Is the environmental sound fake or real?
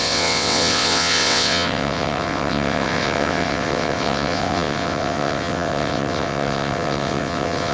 fake